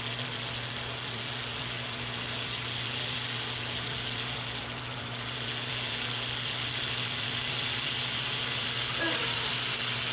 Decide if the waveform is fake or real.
fake